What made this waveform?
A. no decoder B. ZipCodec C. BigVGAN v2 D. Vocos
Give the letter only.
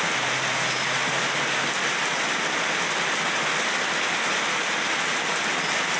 A